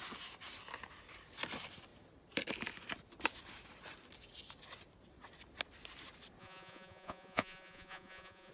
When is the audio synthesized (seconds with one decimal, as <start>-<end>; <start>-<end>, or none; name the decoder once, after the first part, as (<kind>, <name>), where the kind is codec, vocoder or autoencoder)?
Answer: 6.4-8.5 (vocoder, Vocos)

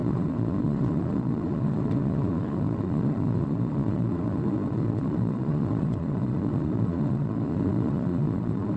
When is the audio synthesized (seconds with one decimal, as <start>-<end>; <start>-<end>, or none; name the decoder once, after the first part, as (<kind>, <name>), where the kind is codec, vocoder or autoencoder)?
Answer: 0.0-8.8 (vocoder, Vocos)

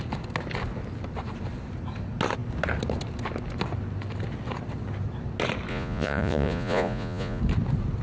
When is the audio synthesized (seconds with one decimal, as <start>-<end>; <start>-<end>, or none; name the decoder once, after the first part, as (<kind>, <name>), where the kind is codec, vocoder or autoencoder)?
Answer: 5.7-7.4 (vocoder, Vocos)

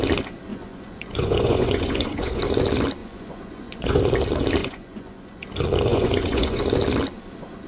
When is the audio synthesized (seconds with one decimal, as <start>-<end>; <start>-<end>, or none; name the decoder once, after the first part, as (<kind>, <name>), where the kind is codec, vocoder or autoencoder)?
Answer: 0.5-2.4 (vocoder, Vocos); 3.0-4.0; 4.6-5.4; 5.9-6.6

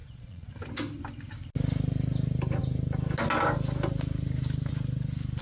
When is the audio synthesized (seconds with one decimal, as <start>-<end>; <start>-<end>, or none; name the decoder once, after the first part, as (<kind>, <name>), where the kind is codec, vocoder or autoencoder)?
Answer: 0.0-0.5 (vocoder, Vocos)

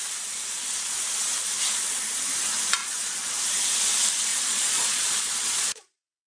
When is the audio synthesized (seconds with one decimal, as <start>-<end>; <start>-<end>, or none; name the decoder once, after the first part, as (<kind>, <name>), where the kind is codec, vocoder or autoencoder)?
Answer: 2.8-3.3 (vocoder, Vocos); 4.3-6.3

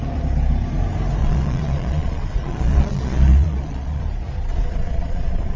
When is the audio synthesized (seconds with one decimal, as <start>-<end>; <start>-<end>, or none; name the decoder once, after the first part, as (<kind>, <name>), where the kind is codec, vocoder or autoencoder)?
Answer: 1.2-4.0 (vocoder, Vocos); 4.5-5.6